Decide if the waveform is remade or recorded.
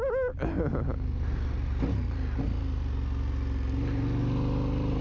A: recorded